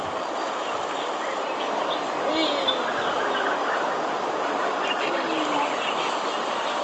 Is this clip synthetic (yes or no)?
no